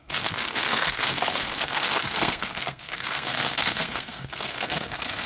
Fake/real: fake